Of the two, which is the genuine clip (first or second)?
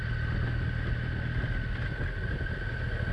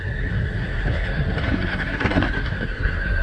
first